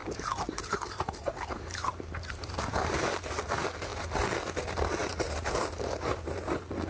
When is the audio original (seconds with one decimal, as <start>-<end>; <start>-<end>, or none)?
3.5-5.0; 6.5-6.9